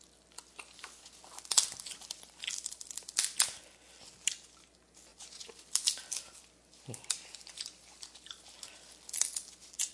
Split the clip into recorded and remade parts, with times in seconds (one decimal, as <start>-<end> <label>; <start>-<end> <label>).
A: 0.0-9.9 recorded